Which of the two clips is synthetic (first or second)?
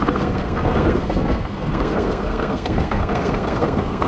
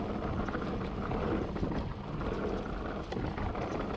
first